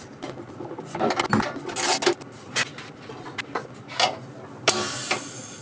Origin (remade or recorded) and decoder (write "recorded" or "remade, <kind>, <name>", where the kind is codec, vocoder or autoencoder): recorded